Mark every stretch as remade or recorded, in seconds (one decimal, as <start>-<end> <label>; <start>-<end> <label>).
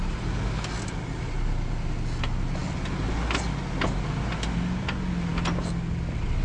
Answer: 0.0-6.4 recorded